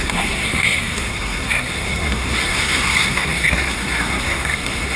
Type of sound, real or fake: fake